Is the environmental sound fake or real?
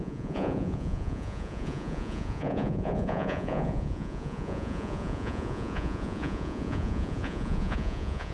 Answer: fake